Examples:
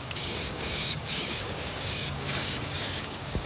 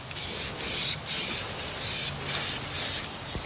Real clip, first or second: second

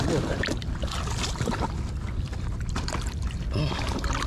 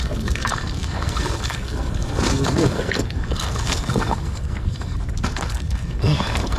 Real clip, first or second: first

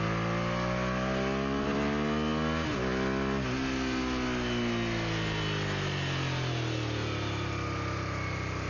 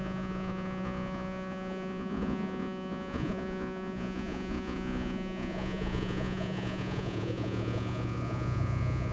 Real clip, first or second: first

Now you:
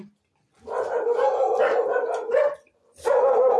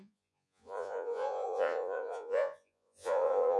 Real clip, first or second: first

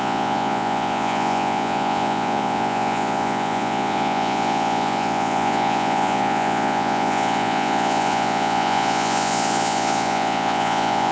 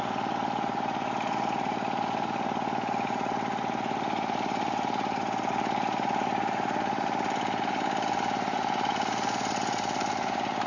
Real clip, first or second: second